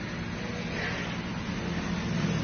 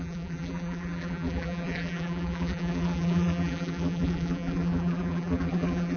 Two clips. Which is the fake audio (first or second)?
second